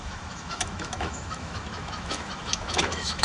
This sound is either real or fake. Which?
fake